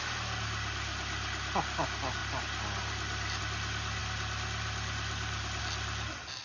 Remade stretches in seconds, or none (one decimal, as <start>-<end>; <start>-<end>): none